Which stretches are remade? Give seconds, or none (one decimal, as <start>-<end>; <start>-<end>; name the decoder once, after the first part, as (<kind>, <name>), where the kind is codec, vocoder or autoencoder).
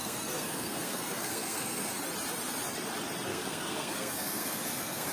0.0-1.9 (codec, SNAC); 3.3-5.1